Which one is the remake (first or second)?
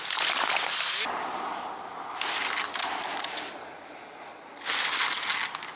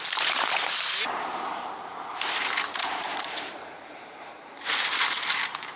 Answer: second